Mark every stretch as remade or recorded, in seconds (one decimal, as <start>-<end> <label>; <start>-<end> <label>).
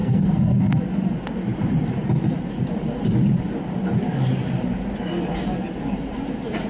0.0-0.8 remade; 0.8-6.7 recorded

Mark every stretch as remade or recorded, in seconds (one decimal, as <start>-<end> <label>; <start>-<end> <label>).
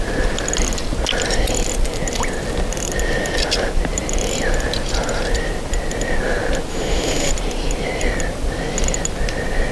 0.0-6.7 recorded; 6.7-7.3 remade; 7.3-9.7 recorded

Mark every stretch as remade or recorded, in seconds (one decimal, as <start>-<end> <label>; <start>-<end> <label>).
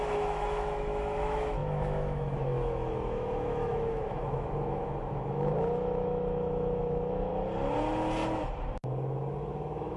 0.0-7.3 remade; 7.3-9.5 recorded; 9.5-10.0 remade